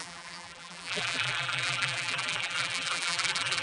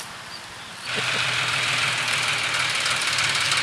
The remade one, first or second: first